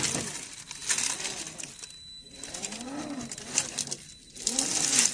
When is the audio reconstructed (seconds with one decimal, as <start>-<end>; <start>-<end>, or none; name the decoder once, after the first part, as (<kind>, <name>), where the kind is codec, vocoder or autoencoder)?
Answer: none